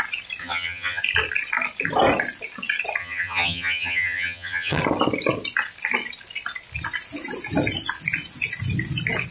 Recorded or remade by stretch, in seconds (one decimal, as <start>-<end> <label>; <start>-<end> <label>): 0.0-0.4 recorded; 0.4-1.0 remade; 1.0-3.0 recorded; 3.0-4.8 remade; 4.8-9.3 recorded